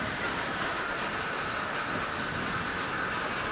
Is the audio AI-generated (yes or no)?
no